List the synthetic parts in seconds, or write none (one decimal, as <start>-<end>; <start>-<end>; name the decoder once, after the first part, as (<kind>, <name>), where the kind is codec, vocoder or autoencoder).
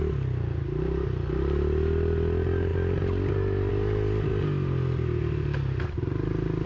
none